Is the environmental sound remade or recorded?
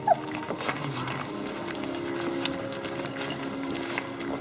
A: recorded